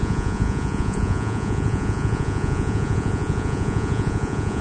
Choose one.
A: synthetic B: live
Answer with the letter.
A